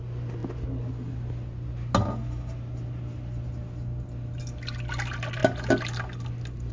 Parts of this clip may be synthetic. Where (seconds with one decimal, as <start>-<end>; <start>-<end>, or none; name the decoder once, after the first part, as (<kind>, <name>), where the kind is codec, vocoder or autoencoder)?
none